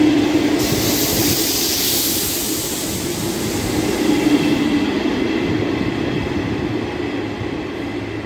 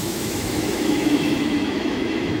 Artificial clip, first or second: second